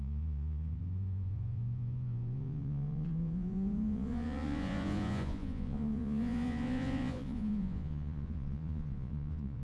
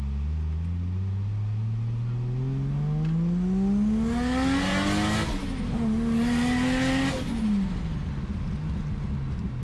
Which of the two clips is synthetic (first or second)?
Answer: first